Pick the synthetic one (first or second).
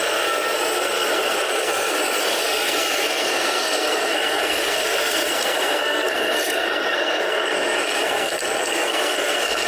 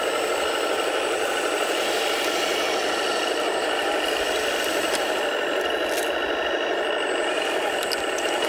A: first